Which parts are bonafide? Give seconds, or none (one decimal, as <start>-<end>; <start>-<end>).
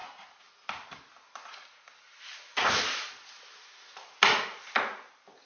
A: 0.0-5.5